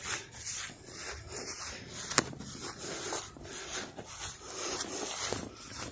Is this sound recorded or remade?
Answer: recorded